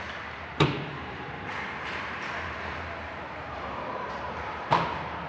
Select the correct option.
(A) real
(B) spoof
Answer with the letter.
B